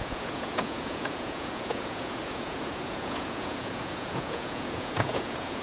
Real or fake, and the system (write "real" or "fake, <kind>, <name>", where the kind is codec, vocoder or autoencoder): fake, vocoder, Vocos